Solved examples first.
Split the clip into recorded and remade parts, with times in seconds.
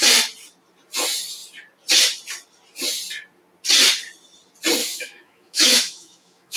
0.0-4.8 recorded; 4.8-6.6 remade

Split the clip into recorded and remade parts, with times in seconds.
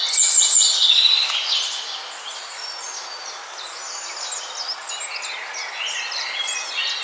0.0-7.0 recorded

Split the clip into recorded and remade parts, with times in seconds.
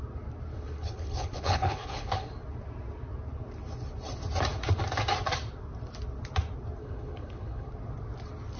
0.0-0.5 recorded; 0.5-2.3 remade; 2.3-6.8 recorded; 6.8-7.7 remade; 7.7-8.6 recorded